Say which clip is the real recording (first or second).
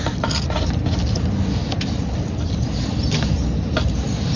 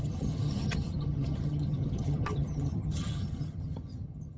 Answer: first